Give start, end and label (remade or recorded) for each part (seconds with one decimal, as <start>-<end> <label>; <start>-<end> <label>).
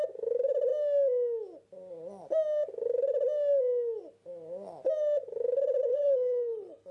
0.0-5.9 recorded; 5.9-6.9 remade